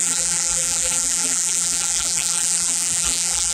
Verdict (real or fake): fake